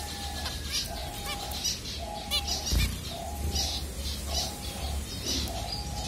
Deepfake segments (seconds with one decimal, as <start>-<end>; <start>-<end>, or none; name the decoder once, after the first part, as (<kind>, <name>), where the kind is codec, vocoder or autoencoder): none